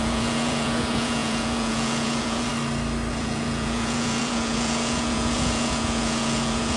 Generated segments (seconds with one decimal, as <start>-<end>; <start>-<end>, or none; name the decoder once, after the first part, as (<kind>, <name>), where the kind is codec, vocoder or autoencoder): 0.0-2.5 (vocoder, Vocos); 3.1-6.8